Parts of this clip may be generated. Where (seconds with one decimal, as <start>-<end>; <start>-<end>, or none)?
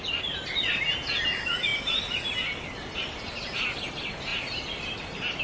none